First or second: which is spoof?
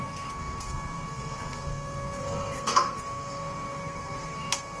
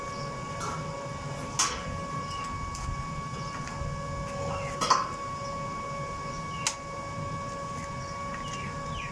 first